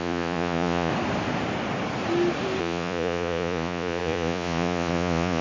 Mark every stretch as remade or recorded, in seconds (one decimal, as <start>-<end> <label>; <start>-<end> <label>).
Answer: 0.0-0.9 remade; 0.9-2.6 recorded; 2.6-5.4 remade